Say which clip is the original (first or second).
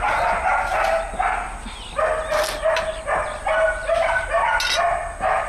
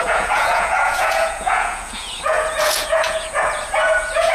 first